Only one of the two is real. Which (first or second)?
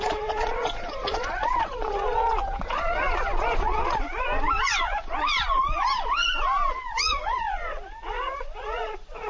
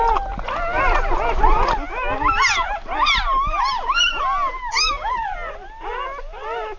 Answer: second